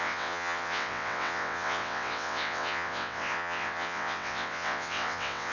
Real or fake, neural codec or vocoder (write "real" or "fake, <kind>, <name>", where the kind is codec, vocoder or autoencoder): fake, vocoder, WaveNeXt